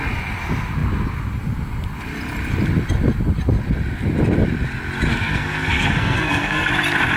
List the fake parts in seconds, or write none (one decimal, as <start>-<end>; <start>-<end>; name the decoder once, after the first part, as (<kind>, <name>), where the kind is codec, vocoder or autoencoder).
5.1-6.7 (codec, SNAC)